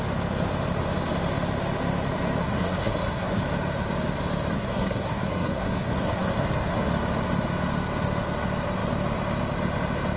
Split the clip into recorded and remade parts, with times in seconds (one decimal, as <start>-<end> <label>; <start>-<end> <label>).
0.0-2.4 recorded; 2.4-3.4 remade; 3.4-4.5 recorded; 4.5-6.9 remade; 6.9-10.2 recorded